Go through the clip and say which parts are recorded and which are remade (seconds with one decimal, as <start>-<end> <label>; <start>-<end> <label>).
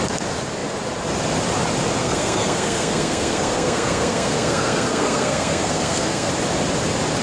0.0-2.0 recorded; 2.0-6.3 remade; 6.3-7.2 recorded